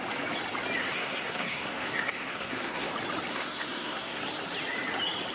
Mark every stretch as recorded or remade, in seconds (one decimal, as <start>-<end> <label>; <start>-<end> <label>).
0.0-0.8 recorded; 0.8-2.9 remade; 2.9-3.3 recorded; 3.3-4.2 remade; 4.2-5.3 recorded